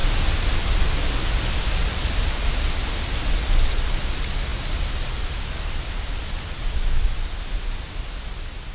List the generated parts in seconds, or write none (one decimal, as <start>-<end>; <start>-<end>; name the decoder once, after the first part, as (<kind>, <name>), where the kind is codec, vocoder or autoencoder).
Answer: none